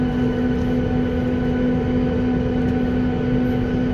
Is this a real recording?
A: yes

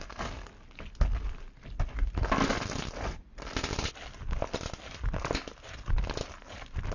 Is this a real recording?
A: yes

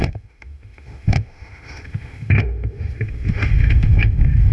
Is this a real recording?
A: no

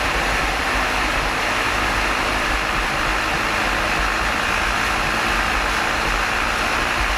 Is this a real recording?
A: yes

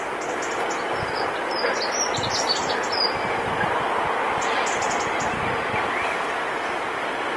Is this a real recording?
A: yes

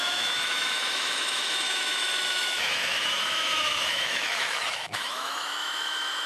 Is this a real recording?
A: no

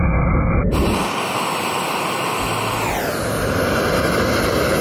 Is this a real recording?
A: yes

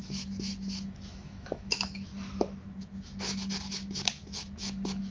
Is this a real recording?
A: no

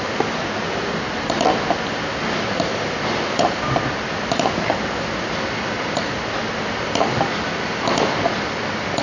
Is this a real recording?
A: yes